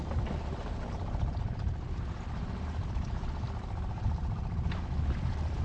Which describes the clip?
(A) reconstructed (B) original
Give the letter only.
B